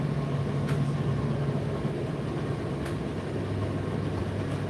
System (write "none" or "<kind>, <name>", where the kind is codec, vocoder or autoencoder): none